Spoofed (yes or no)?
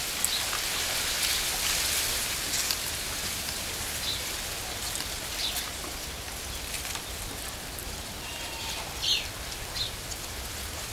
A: no